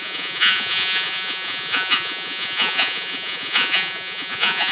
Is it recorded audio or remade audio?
remade